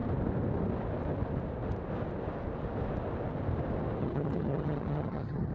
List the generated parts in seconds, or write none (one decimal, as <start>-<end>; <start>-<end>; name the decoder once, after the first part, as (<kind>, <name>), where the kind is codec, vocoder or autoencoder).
4.0-5.5 (vocoder, HiFi-GAN)